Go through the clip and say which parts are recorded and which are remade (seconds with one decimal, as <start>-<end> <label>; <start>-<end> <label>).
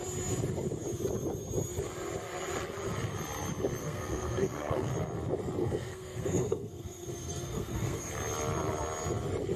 0.0-3.8 recorded; 3.8-4.9 remade; 4.9-5.6 recorded; 5.6-8.1 remade; 8.1-9.6 recorded